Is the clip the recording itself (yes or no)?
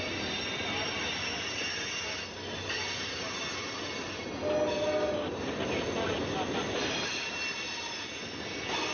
yes